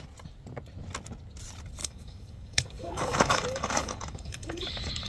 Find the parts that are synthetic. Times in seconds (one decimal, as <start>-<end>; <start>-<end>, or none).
1.8-5.1